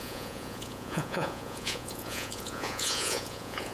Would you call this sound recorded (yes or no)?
no